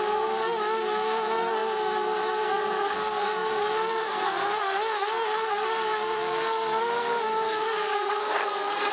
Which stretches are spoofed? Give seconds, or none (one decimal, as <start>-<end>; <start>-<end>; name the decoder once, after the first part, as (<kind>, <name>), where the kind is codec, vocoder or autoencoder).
0.0-8.9 (codec, SNAC)